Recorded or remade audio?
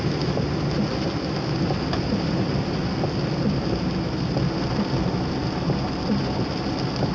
recorded